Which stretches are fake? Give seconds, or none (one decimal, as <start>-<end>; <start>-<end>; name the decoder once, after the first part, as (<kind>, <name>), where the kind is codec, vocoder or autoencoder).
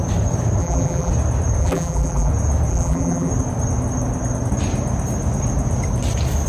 0.6-1.1 (vocoder, BigVGAN v2); 1.6-2.3; 2.7-3.3